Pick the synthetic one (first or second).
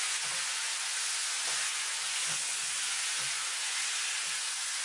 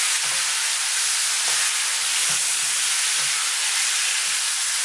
first